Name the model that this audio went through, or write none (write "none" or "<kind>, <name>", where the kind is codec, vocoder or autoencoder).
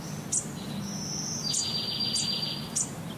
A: none